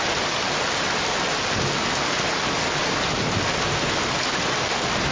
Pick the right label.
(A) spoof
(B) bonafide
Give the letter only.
B